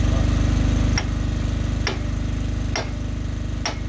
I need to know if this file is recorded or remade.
recorded